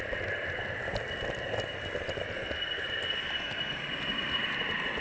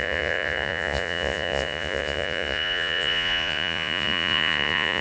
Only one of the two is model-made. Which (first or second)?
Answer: second